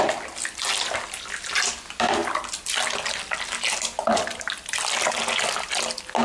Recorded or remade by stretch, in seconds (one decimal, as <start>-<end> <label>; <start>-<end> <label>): 0.0-6.2 recorded